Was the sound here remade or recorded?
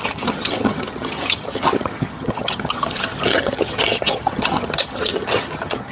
remade